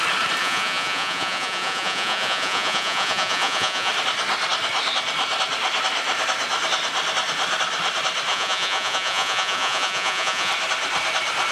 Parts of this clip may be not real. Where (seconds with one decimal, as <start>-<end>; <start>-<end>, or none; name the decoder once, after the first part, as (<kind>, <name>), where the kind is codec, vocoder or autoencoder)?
0.4-3.9 (vocoder, Vocos); 8.3-10.5